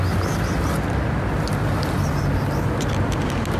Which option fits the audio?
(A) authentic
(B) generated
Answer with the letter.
A